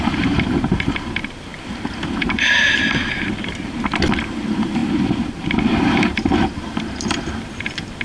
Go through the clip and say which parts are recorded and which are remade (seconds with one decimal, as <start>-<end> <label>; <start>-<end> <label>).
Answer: 0.0-8.0 remade